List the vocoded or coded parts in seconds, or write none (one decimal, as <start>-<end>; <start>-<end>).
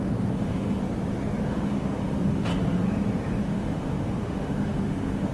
0.0-0.8; 1.4-2.5; 3.4-5.3